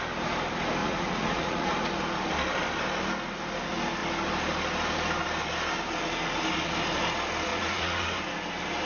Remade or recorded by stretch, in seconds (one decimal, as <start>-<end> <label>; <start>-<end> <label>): 0.0-0.8 recorded; 0.8-1.7 remade; 1.7-7.5 recorded; 7.5-8.2 remade; 8.2-8.9 recorded